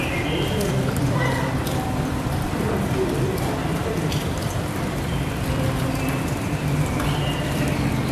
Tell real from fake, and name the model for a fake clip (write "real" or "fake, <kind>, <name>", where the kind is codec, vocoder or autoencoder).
fake, vocoder, BigVGAN v2